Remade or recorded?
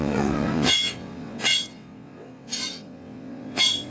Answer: remade